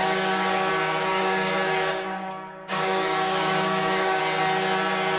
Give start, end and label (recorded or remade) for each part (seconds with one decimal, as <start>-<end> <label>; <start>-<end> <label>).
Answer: 0.0-0.7 remade; 0.7-1.1 recorded; 1.1-4.2 remade; 4.2-5.2 recorded